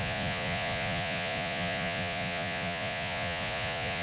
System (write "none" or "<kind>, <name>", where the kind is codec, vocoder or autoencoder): vocoder, Vocos